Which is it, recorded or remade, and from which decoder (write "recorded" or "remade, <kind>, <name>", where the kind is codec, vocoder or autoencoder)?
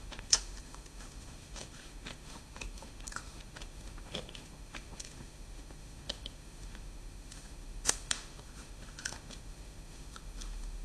remade, autoencoder, DAC-VAE